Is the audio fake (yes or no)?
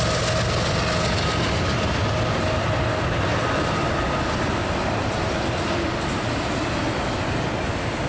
no